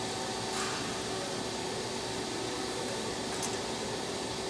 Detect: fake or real real